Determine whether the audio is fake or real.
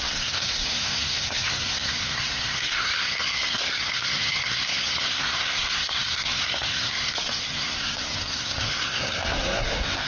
fake